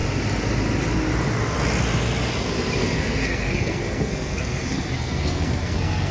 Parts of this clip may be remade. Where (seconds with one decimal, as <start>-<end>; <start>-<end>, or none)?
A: 2.8-6.1